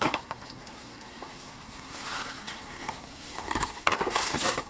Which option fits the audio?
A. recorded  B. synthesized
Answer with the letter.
B